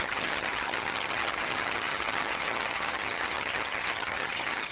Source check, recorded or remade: remade